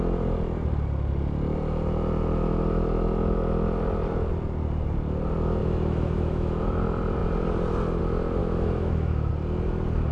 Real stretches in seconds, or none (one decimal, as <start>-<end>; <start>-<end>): 0.0-5.6; 6.8-8.4; 9.3-10.1